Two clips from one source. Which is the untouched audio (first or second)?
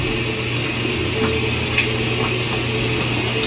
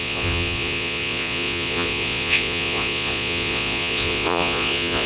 first